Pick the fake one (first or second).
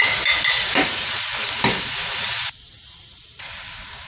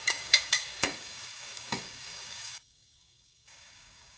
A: second